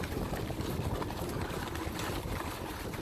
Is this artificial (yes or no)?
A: no